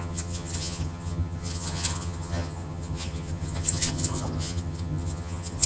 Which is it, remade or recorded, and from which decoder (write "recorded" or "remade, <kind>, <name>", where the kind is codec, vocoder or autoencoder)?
remade, vocoder, HiFi-GAN